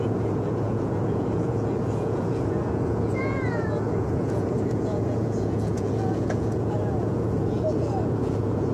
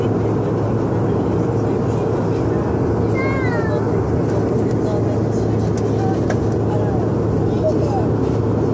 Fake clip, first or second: first